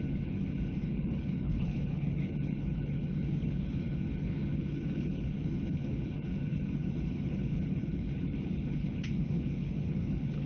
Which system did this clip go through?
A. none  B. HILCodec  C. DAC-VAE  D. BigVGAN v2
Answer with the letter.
B